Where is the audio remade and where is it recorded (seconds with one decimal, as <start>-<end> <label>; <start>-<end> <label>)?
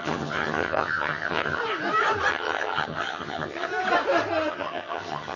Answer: 0.0-1.6 remade; 1.6-2.3 recorded; 2.3-3.7 remade; 3.7-4.5 recorded; 4.5-5.4 remade